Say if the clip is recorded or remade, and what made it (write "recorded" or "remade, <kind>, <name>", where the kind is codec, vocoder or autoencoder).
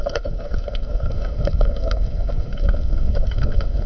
remade, codec, SNAC